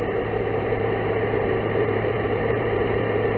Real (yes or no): no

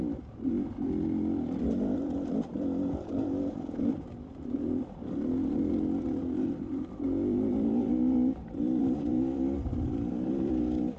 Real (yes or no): no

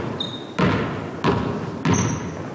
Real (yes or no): yes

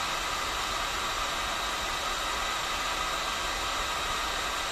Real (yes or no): yes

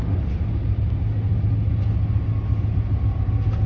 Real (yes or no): yes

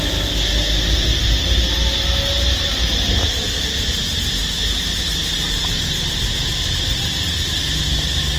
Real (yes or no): yes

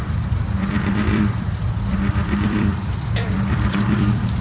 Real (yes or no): no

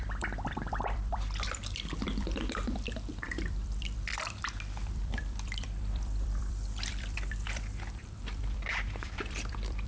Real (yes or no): no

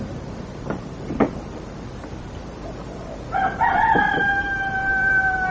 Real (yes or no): no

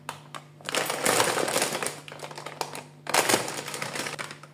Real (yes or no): yes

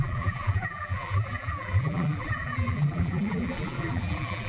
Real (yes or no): no